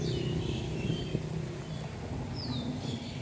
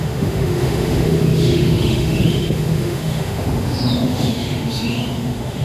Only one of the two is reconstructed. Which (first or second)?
second